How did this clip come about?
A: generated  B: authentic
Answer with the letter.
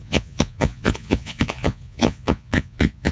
A